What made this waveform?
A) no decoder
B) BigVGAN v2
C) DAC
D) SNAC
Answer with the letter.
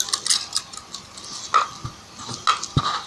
A